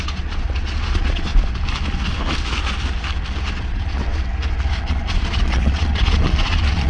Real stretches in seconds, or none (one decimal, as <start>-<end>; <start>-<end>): 1.3-3.5; 4.0-4.8